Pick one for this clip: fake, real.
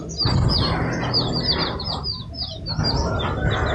real